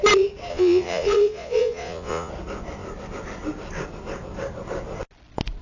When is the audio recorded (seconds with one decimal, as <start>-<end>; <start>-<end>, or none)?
0.0-0.5; 2.3-5.6